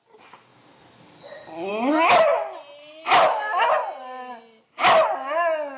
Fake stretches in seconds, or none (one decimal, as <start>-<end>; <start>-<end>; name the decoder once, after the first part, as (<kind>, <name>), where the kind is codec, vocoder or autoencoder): none